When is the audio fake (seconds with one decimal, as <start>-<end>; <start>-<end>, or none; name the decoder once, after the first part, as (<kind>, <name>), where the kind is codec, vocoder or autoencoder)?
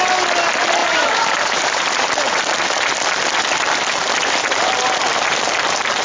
0.8-2.1 (vocoder, BigVGAN v2)